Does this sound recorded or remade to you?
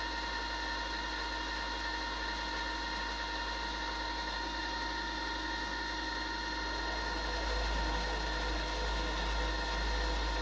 recorded